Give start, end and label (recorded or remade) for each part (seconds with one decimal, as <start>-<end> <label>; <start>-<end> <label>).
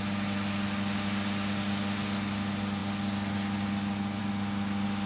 0.0-5.1 recorded